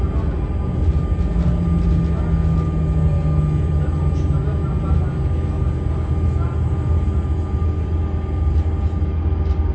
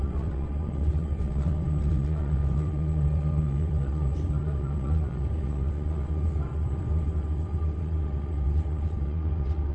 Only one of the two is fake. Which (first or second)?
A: second